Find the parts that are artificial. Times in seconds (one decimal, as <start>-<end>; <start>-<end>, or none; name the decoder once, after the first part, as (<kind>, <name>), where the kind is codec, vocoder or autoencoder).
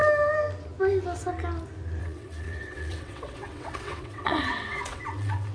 2.0-5.5 (vocoder, WaveNeXt)